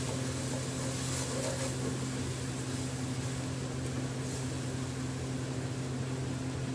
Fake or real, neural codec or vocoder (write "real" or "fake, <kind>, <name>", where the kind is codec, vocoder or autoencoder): real